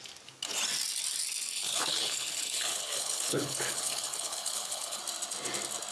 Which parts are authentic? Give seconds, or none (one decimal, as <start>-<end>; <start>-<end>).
0.0-1.5; 5.0-5.9